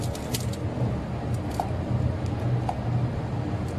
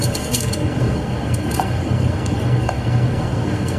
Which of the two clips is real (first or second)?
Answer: first